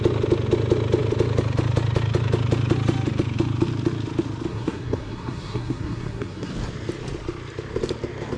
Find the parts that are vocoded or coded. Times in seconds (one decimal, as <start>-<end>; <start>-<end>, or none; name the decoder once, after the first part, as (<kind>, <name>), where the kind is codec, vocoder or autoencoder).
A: 4.5-6.5 (codec, SNAC)